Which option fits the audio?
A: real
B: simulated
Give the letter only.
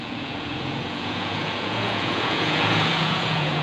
B